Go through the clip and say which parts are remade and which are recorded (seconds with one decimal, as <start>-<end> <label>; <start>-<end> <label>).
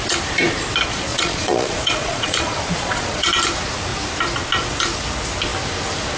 0.0-1.1 recorded; 1.1-3.3 remade; 3.3-6.2 recorded